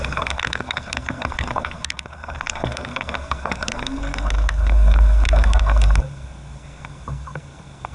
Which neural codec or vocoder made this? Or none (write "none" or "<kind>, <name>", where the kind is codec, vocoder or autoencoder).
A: codec, SNAC